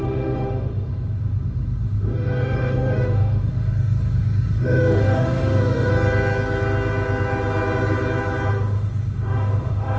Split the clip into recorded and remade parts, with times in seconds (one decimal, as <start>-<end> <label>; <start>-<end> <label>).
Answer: 0.0-5.9 remade; 5.9-8.5 recorded; 8.5-10.0 remade